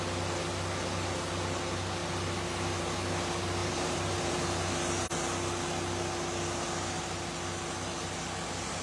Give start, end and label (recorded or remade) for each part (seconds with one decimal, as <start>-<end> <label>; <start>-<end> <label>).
0.0-3.6 recorded; 3.6-4.7 remade; 4.7-8.8 recorded